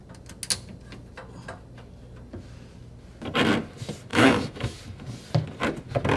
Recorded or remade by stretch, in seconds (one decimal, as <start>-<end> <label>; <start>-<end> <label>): 0.0-4.1 recorded; 4.1-4.8 remade; 4.8-6.2 recorded